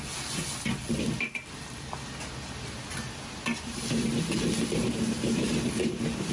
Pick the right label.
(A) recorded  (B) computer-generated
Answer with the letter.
A